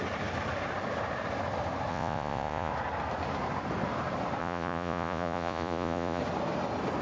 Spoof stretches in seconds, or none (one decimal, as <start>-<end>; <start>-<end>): 1.9-2.7; 4.4-6.2

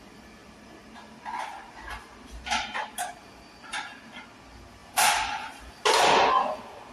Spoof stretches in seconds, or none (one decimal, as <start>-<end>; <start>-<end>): 0.4-3.7; 4.8-6.0

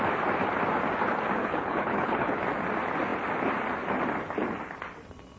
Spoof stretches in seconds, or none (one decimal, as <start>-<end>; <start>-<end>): 1.4-2.4

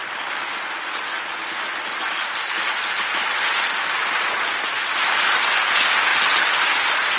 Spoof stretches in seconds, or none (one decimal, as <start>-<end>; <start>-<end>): 4.7-5.4

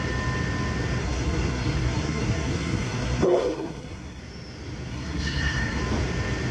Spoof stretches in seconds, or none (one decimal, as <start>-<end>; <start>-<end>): 1.0-4.2; 4.9-5.8

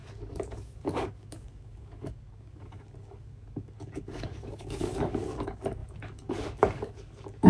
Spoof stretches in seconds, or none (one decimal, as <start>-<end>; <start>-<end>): 0.0-7.5

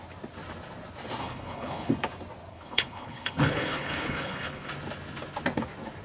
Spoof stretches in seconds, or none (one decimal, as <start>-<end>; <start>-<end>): 1.2-1.9; 2.5-4.7

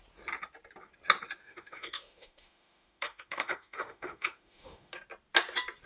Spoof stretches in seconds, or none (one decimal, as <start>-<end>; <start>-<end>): 1.4-4.9